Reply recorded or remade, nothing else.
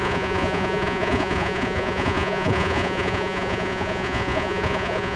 remade